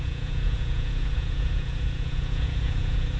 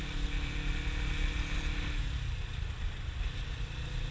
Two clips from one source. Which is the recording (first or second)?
second